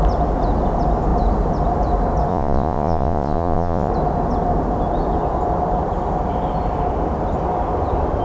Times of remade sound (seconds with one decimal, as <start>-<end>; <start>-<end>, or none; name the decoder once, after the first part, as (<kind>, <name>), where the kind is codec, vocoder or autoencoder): 2.3-3.9 (vocoder, Vocos)